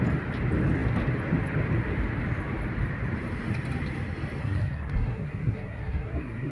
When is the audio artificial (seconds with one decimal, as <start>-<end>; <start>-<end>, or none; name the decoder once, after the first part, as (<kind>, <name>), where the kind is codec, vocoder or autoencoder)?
4.4-6.5 (codec, SNAC)